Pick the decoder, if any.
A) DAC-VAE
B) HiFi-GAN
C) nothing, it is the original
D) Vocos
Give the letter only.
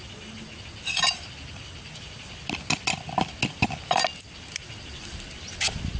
C